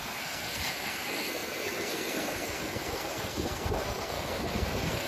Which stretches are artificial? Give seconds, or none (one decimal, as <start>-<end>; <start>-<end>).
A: 0.0-5.1